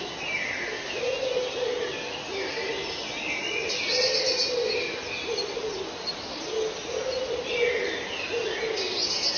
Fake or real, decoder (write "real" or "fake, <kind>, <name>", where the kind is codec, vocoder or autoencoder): real